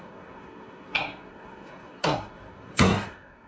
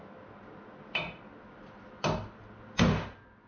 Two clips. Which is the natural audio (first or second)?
second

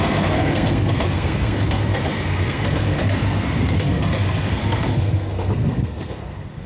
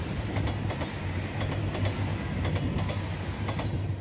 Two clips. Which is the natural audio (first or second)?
second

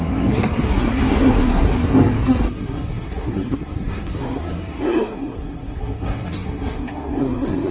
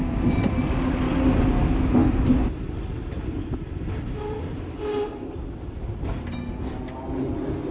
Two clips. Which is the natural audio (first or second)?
second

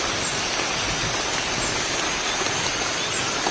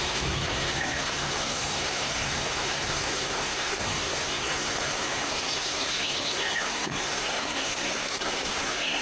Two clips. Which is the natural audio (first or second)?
first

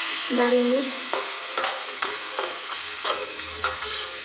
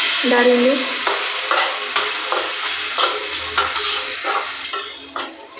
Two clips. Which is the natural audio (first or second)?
second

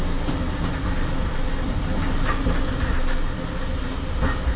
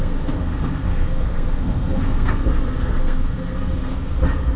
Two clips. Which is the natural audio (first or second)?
first